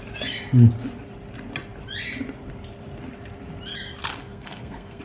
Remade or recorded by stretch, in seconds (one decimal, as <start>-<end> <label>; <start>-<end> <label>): 0.0-4.2 recorded; 4.2-5.0 remade